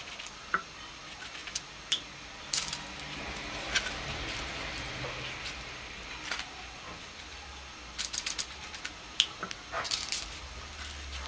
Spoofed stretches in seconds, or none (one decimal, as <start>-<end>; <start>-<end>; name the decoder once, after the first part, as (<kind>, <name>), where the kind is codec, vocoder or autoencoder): none